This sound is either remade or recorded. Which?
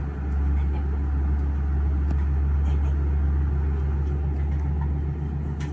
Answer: recorded